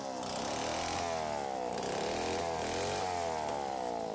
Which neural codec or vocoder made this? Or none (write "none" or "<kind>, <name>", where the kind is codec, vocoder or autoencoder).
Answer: none